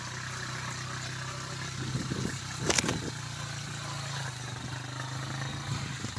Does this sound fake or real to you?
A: real